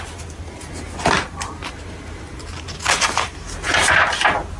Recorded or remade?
recorded